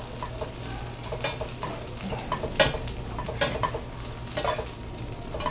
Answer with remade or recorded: recorded